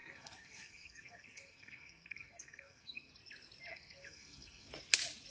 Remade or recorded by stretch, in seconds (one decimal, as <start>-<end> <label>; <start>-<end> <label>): 0.0-3.1 remade; 3.1-3.7 recorded; 3.7-4.7 remade; 4.7-5.3 recorded